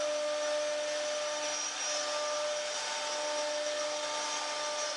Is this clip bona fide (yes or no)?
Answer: yes